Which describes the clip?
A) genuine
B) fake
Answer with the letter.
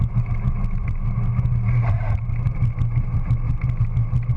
A